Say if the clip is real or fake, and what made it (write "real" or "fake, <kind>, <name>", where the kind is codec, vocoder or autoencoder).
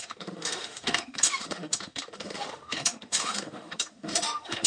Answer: fake, autoencoder, DAC-VAE